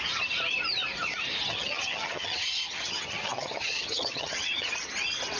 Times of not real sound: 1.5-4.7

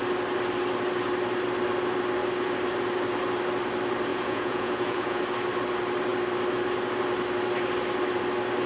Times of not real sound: 4.1-5.2

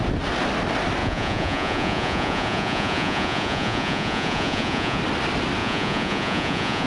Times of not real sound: 1.0-5.0; 5.6-6.9

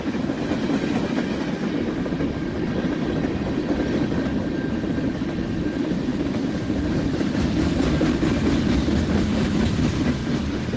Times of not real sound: none

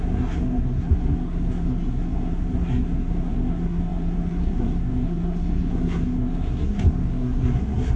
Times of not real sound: 0.0-8.0

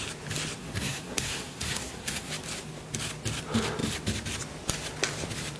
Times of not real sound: 0.6-2.3

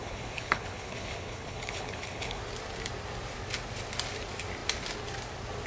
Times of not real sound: 0.0-2.4

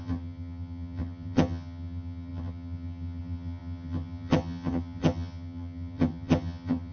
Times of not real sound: 0.0-6.9